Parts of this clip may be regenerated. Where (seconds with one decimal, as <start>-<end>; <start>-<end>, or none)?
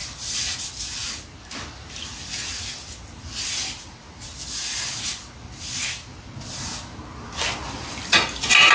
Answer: none